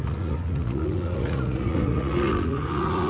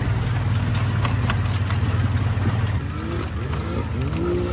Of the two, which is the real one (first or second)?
second